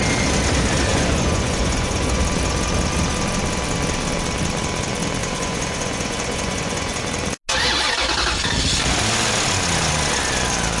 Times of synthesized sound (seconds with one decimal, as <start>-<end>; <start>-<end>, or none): 0.9-2.2; 5.2-7.0